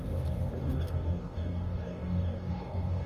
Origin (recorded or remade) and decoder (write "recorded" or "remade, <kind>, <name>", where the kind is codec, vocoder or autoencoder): remade, codec, DAC